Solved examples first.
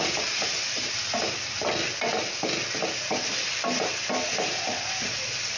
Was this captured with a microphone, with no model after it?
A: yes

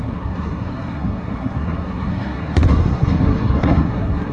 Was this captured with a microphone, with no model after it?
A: no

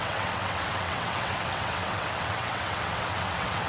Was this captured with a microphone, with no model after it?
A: no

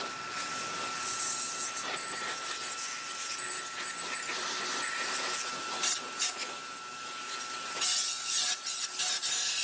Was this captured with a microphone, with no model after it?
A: yes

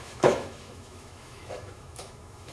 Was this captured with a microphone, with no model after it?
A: no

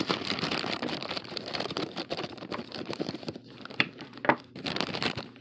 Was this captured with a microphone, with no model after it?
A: no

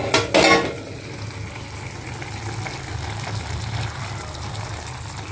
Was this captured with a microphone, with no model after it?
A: yes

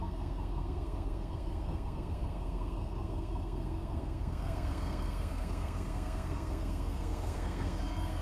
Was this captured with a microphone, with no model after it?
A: no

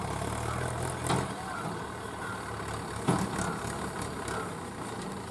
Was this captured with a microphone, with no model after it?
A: yes